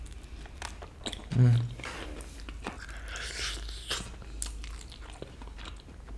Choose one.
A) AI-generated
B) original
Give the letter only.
B